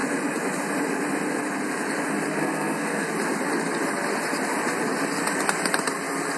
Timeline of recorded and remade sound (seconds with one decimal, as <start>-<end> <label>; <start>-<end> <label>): 0.0-2.4 recorded; 2.4-3.1 remade; 3.1-6.4 recorded